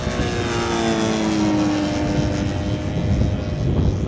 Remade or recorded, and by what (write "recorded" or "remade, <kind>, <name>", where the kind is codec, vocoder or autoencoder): recorded